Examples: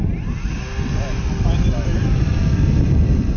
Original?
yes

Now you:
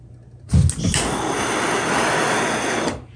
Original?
yes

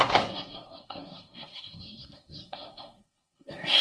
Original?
no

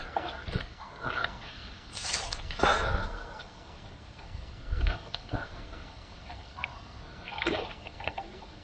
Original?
no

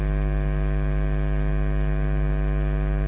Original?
yes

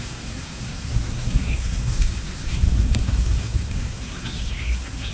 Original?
no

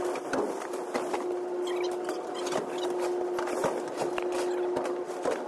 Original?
yes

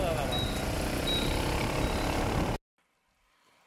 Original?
yes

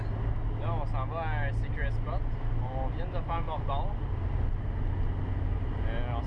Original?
yes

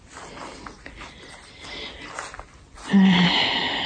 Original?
yes